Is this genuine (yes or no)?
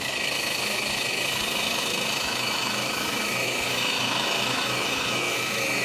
no